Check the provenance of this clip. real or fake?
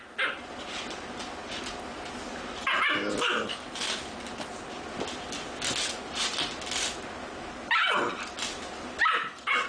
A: real